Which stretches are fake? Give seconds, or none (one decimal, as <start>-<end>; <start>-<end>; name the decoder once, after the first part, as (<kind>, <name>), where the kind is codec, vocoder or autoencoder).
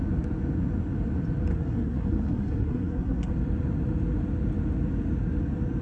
1.5-3.3 (codec, SNAC)